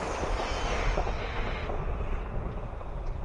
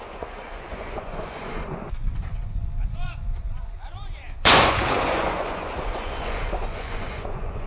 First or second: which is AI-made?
second